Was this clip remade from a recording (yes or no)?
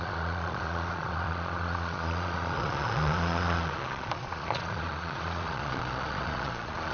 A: yes